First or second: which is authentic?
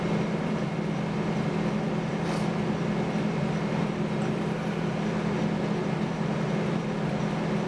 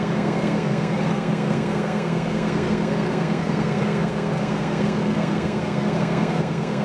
first